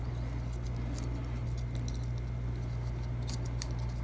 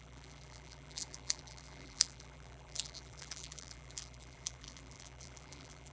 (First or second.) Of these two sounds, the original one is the first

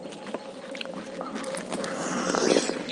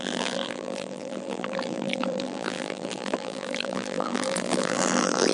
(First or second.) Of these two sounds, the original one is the first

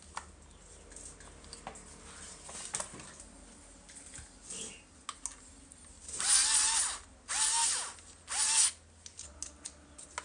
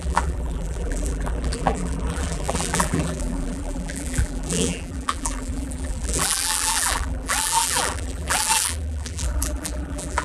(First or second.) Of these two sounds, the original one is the first